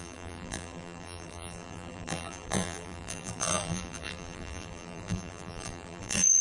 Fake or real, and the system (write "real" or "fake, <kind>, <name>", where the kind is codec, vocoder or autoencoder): fake, vocoder, BigVGAN v2